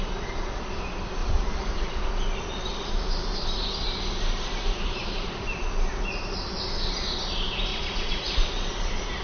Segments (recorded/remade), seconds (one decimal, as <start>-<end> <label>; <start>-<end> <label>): 0.0-1.2 recorded; 1.2-2.1 remade; 2.1-7.7 recorded; 7.7-8.3 remade; 8.3-9.2 recorded